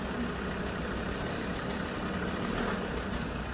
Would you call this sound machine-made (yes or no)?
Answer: no